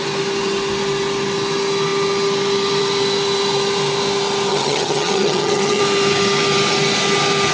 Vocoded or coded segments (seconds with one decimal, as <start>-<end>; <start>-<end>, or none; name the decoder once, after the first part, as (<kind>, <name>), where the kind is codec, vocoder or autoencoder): 4.5-5.8 (vocoder, HiFi-GAN)

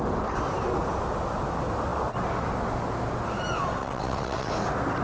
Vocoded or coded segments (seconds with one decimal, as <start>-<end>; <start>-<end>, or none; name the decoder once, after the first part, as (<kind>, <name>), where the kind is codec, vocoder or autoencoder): 3.8-4.5 (vocoder, WaveNeXt)

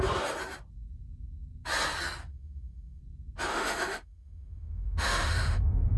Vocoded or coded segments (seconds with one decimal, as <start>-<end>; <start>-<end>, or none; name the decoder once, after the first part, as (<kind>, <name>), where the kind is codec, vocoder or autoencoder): 2.3-3.0 (autoencoder, DAC-VAE); 3.5-6.0

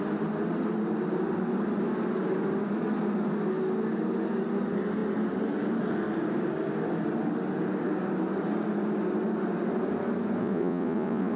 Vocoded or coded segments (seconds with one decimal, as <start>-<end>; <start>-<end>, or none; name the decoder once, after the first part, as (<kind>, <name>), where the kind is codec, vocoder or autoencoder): 10.4-11.4 (vocoder, Vocos)

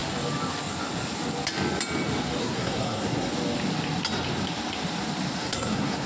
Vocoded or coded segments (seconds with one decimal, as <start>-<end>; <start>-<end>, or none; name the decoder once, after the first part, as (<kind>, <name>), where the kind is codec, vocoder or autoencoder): 2.4-3.3 (codec, SNAC); 5.4-6.1

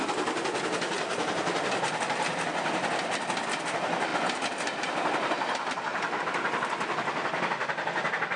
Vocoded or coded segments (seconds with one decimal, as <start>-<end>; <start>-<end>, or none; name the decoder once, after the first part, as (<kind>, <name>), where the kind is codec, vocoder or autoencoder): none